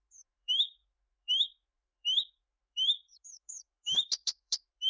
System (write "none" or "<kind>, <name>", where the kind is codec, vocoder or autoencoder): autoencoder, DAC-VAE